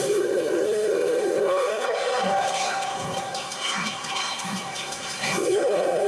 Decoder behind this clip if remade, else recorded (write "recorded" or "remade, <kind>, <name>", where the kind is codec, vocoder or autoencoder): remade, codec, SNAC